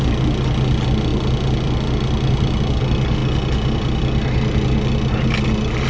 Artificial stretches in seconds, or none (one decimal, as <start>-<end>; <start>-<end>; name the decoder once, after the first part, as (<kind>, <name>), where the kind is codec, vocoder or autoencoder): none